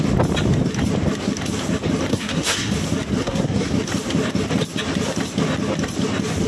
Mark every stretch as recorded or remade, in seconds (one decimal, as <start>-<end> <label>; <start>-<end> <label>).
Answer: 0.0-2.1 recorded; 2.1-2.7 remade; 2.7-3.2 recorded; 3.2-3.7 remade; 3.7-6.5 recorded